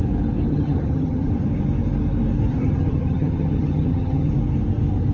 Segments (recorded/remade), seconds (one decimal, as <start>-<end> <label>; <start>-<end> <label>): 0.0-0.5 recorded; 0.5-1.3 remade; 1.3-2.5 recorded; 2.5-4.3 remade; 4.3-5.1 recorded